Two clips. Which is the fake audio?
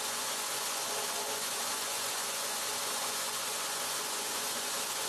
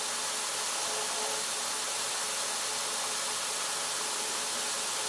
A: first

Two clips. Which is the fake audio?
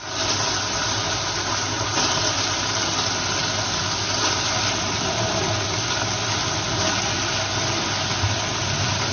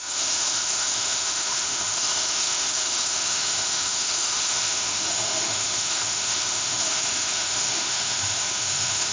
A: second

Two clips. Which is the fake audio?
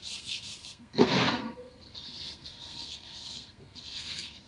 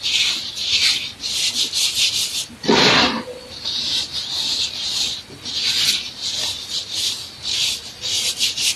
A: first